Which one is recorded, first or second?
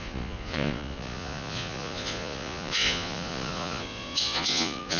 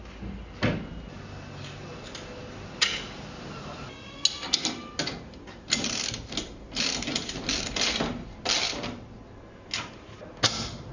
second